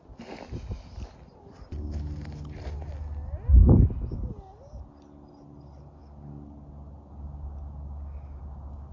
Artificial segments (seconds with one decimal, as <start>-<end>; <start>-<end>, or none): none